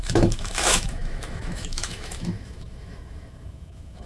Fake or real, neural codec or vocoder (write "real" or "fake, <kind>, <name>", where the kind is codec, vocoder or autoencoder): fake, autoencoder, DAC-VAE